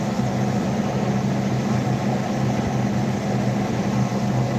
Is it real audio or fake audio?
real